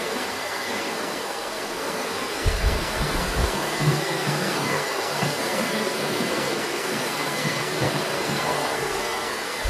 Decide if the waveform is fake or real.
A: fake